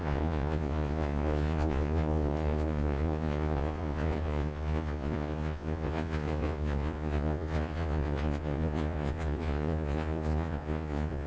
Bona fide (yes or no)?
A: no